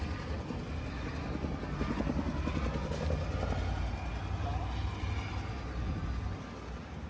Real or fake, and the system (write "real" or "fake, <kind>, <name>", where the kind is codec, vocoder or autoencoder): real